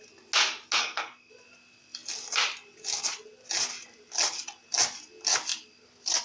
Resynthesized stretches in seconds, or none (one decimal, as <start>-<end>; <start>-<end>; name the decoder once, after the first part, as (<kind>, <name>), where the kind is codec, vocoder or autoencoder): 0.8-1.3 (codec, SNAC)